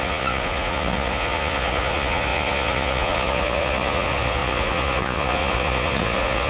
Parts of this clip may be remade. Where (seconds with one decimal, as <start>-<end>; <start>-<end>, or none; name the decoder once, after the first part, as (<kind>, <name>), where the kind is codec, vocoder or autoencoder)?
0.0-6.5 (vocoder, Vocos)